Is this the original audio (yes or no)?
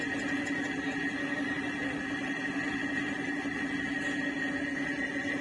yes